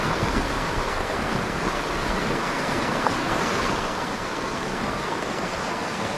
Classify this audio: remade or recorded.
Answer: remade